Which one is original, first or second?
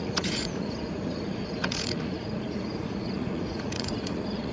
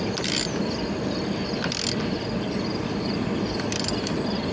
second